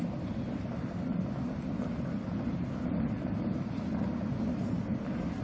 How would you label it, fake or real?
real